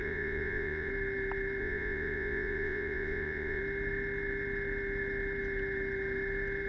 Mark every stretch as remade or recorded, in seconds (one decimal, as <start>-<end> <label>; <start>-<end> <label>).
0.0-0.9 remade; 0.9-1.6 recorded; 1.6-3.6 remade; 3.6-6.7 recorded

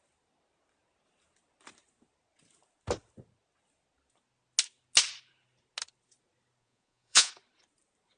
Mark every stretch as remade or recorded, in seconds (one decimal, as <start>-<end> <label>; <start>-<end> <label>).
0.0-6.6 recorded; 6.6-7.3 remade; 7.3-8.2 recorded

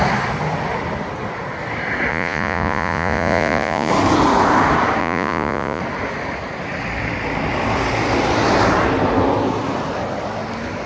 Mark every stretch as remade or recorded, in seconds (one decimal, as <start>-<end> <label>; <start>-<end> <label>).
0.0-2.1 recorded; 2.1-3.9 remade; 3.9-5.0 recorded; 5.0-5.8 remade; 5.8-10.9 recorded